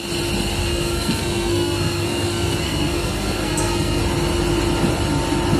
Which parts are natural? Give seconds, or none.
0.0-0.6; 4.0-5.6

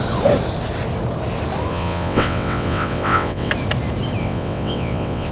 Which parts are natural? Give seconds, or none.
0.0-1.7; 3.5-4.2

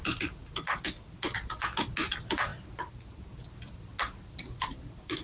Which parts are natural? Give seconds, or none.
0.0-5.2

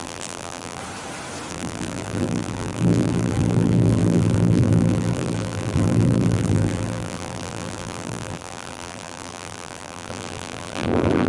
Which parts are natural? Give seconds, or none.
0.8-1.5